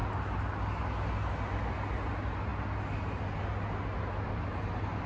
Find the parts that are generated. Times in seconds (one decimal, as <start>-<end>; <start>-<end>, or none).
none